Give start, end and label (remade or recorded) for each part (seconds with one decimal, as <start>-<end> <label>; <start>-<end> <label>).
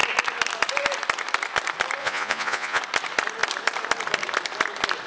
0.0-2.0 recorded; 2.0-2.8 remade; 2.8-5.1 recorded